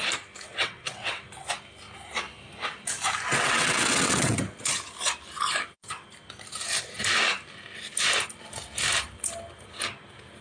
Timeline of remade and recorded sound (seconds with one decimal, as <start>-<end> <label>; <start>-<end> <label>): 0.0-0.5 recorded; 0.5-1.2 remade; 1.2-3.3 recorded; 3.3-4.4 remade; 4.4-10.4 recorded